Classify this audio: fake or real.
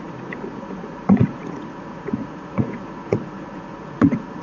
fake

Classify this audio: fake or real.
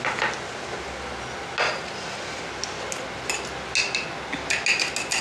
real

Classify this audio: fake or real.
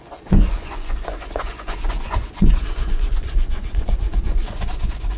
fake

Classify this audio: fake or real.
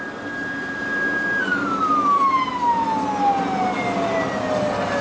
real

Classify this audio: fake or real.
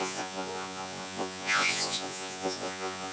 fake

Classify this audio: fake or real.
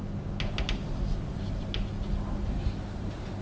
real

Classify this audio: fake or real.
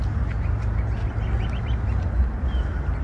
real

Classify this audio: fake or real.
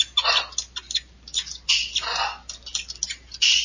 real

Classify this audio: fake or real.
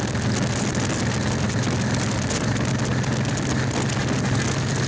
real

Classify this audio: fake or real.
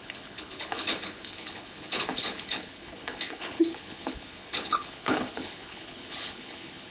fake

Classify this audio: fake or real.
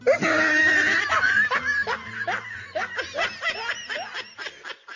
real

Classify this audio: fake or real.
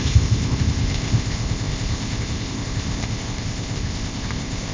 fake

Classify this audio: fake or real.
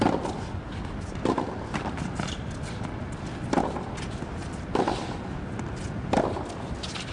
real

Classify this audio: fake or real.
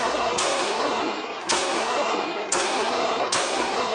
fake